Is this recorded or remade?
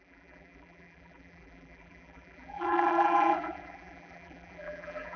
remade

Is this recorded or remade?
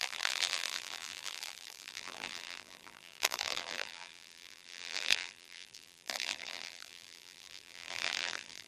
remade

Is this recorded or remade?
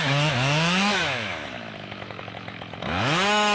remade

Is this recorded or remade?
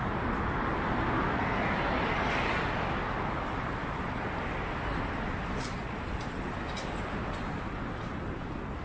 recorded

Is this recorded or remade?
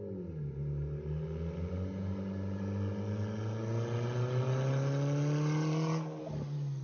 recorded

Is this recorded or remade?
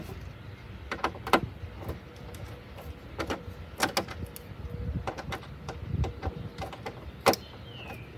recorded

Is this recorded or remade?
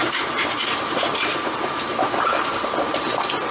remade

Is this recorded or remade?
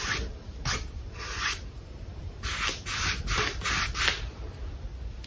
recorded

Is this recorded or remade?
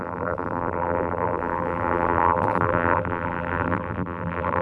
remade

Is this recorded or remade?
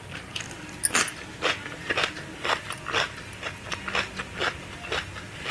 recorded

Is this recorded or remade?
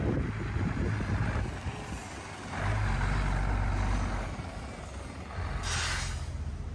recorded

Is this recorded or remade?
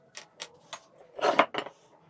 recorded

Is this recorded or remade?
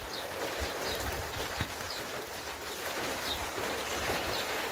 remade